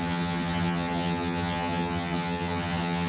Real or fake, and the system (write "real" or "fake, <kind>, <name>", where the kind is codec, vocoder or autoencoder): fake, vocoder, HiFi-GAN